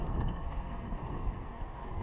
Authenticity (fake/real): fake